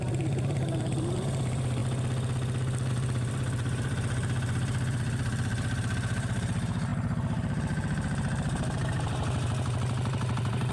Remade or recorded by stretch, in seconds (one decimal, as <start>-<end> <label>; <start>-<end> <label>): 0.0-1.8 remade; 1.8-2.9 recorded; 2.9-10.7 remade